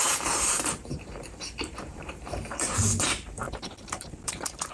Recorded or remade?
remade